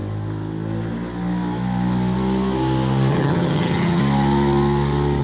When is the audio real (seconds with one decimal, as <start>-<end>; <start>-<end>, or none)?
0.0-3.1; 4.0-5.2